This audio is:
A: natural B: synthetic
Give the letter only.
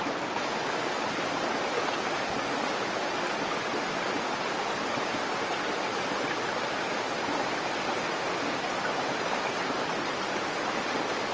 A